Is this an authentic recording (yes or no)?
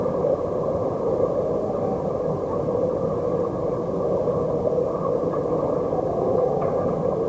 yes